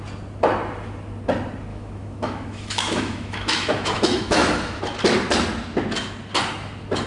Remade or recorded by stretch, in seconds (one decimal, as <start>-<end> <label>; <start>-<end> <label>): 0.0-1.7 recorded; 1.7-4.8 remade; 4.8-7.1 recorded

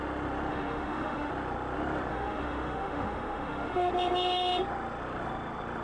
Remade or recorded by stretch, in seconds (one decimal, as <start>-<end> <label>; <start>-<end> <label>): 0.0-0.5 recorded; 0.5-1.3 remade; 1.3-2.1 recorded; 2.1-3.9 remade; 3.9-5.8 recorded